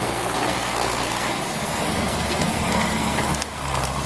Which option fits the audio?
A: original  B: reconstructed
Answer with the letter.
B